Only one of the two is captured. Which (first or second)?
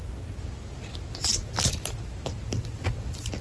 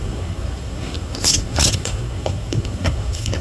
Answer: first